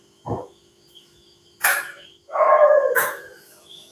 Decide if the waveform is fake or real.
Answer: fake